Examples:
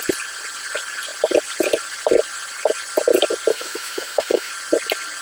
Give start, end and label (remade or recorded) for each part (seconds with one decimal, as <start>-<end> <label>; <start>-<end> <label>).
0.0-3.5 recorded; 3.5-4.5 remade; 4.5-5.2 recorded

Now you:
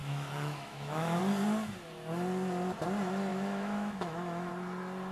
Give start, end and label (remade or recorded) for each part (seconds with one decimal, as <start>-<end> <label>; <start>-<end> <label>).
0.0-1.2 remade; 1.2-3.3 recorded; 3.3-4.5 remade; 4.5-5.1 recorded

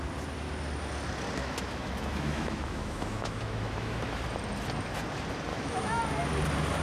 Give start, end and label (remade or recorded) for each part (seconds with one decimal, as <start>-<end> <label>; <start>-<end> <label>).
0.0-1.4 recorded; 1.4-4.2 remade; 4.2-5.5 recorded; 5.5-6.0 remade; 6.0-6.8 recorded